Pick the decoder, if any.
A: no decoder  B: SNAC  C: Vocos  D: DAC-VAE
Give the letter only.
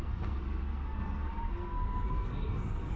B